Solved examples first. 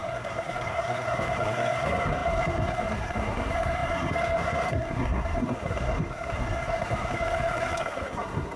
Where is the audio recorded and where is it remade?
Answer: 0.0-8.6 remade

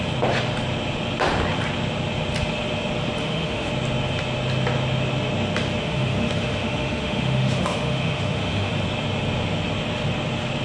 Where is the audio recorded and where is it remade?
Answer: 0.0-3.2 recorded; 3.2-3.7 remade; 3.7-5.8 recorded; 5.8-8.7 remade; 8.7-10.6 recorded

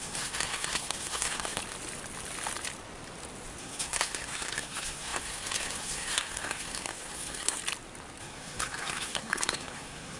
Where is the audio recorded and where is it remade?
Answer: 0.0-1.6 remade; 1.6-3.6 recorded; 3.6-7.6 remade; 7.6-8.2 recorded; 8.2-10.2 remade

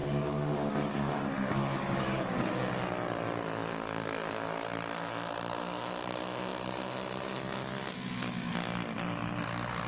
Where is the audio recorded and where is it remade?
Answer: 0.0-2.5 remade; 2.5-3.7 recorded; 3.7-4.3 remade; 4.3-9.9 recorded